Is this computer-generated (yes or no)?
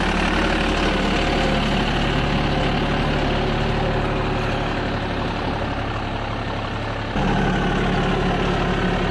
no